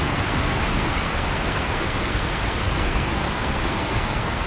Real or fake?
fake